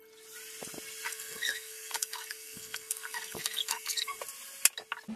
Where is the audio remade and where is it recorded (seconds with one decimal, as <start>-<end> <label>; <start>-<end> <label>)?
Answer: 0.0-1.1 recorded; 1.1-4.2 remade; 4.2-5.2 recorded